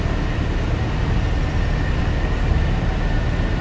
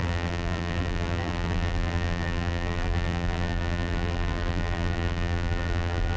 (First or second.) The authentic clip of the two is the first